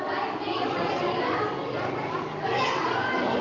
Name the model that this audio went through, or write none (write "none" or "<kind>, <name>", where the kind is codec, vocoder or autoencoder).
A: none